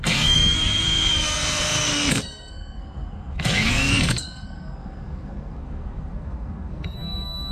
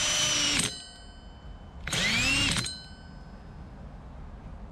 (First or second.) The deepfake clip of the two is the first